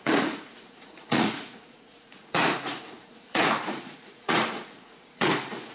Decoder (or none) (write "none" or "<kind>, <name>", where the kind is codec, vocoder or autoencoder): vocoder, Vocos